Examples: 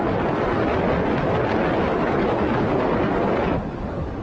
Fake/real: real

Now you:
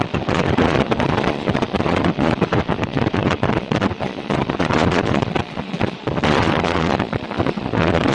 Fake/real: fake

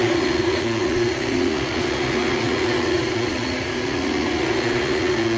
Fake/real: fake